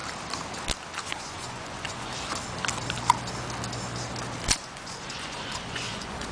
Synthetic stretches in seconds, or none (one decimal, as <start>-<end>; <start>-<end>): 1.0-2.1; 4.6-6.3